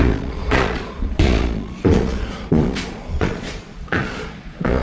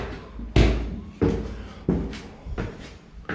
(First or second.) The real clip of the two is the second